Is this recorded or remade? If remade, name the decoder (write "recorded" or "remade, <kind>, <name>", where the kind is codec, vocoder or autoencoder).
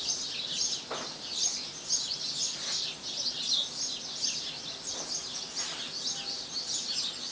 recorded